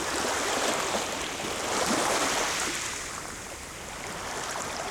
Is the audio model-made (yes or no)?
no